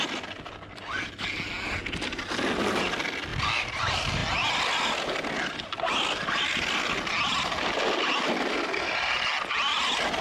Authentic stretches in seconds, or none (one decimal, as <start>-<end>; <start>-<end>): 0.0-10.2